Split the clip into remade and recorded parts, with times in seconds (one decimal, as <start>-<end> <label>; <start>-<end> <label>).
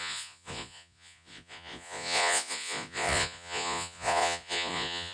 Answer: 0.0-5.1 remade